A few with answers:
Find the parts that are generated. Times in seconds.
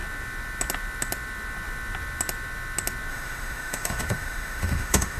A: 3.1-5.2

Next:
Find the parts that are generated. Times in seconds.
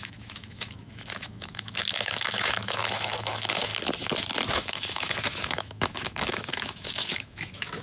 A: 0.0-3.7; 4.5-7.8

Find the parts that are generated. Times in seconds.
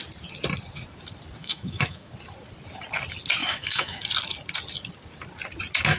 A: 1.4-2.1; 3.4-4.0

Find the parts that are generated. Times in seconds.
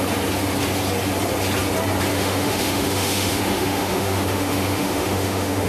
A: 2.1-5.7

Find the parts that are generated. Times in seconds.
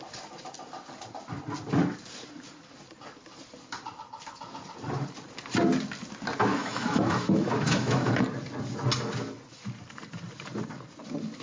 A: 6.5-8.1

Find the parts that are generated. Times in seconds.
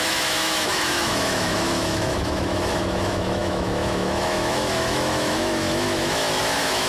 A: 0.0-6.9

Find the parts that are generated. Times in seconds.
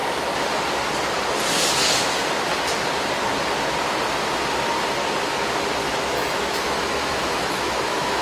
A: 5.9-8.2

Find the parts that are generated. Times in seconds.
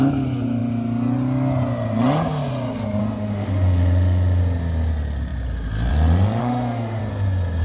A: 3.0-4.4; 6.4-7.0